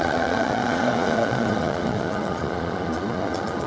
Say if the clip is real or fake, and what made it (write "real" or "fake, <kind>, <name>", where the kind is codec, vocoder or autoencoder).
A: fake, vocoder, Vocos